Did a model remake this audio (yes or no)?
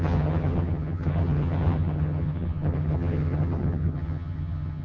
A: yes